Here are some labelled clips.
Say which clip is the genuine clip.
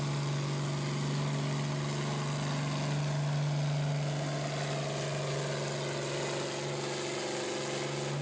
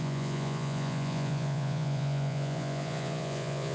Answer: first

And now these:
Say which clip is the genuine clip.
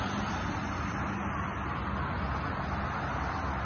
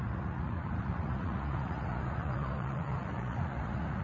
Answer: first